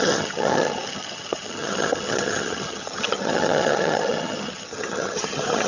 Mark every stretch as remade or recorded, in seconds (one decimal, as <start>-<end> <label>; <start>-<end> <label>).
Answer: 0.0-5.7 remade